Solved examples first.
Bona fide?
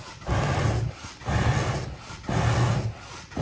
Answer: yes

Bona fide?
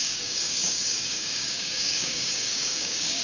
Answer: no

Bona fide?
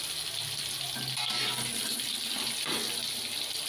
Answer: yes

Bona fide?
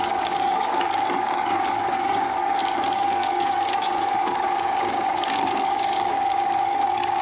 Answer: no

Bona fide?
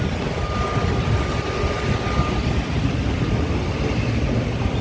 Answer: yes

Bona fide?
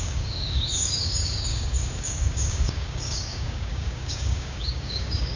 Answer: no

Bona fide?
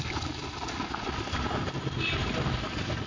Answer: yes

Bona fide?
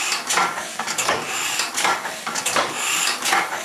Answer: no